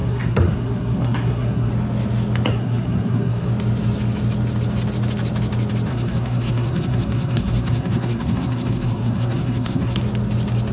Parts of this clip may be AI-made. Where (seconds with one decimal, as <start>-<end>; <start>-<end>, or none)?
0.0-1.7; 2.5-3.5; 5.9-10.0